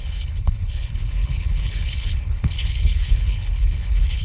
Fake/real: fake